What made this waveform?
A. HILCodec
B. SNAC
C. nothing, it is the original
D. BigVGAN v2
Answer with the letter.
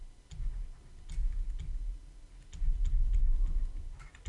C